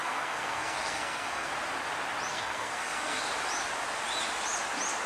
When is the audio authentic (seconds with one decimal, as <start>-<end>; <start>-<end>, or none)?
1.5-2.3; 3.2-5.1